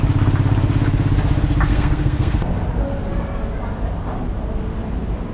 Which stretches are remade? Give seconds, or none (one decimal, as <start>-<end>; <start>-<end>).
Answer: 1.7-2.5